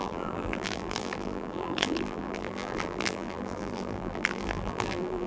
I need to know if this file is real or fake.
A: fake